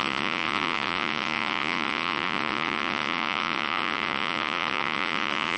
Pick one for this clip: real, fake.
fake